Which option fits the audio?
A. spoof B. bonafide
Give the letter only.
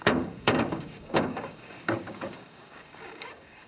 A